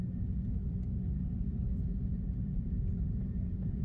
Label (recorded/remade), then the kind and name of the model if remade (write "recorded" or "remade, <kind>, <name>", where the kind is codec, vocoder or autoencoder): remade, vocoder, BigVGAN v2